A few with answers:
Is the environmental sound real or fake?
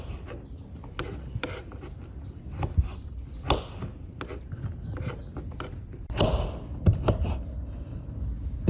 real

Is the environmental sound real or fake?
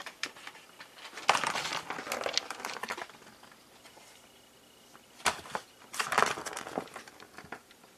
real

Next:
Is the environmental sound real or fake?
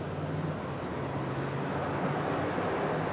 real